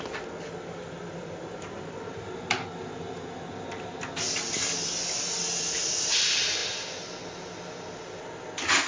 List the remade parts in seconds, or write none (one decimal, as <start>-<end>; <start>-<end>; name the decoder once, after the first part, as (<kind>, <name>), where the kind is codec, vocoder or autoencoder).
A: none